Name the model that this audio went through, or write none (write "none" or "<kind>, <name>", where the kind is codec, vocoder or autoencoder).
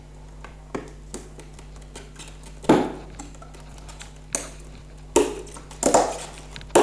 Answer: none